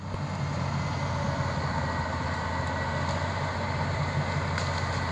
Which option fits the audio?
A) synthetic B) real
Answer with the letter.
B